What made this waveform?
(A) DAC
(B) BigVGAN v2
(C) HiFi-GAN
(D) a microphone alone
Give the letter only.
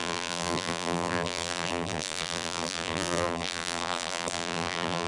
B